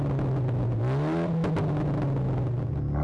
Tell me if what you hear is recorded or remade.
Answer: recorded